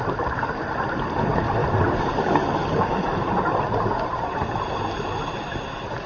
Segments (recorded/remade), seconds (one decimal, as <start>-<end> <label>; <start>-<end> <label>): 0.0-1.6 recorded; 1.6-4.6 remade; 4.6-6.1 recorded